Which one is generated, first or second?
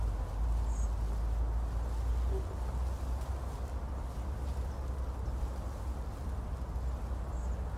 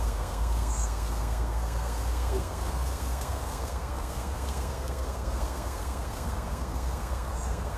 second